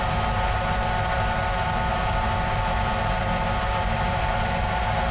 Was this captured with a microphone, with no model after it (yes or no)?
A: yes